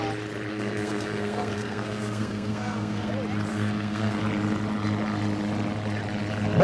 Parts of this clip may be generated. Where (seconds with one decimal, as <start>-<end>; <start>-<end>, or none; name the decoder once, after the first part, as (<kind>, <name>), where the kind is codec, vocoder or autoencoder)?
0.5-3.1 (codec, SNAC); 3.5-4.2